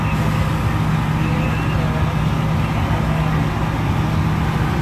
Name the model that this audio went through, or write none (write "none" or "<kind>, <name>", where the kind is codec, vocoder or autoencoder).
none